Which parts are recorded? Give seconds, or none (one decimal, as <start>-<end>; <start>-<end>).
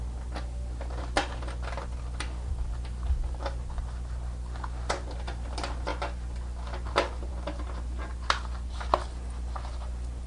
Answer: 0.0-10.3